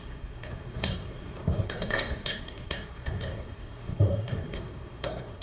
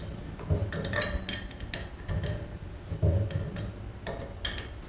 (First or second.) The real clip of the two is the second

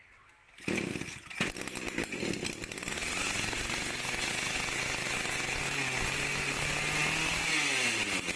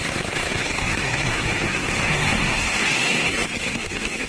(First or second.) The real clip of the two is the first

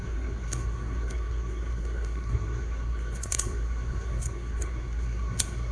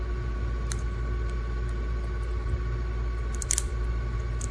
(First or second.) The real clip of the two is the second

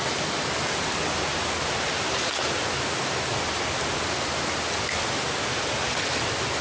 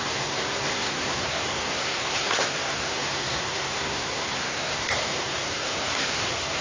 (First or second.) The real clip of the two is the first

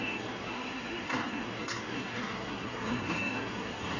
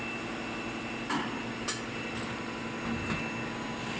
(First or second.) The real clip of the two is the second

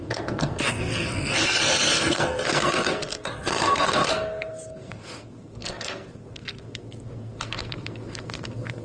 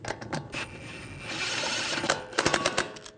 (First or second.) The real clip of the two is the second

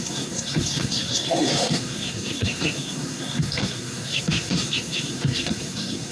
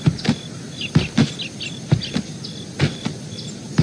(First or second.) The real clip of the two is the second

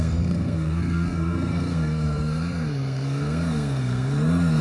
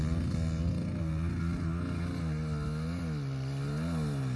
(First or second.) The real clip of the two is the second